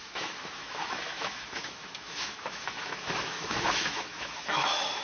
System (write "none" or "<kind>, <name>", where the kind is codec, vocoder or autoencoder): autoencoder, DAC-VAE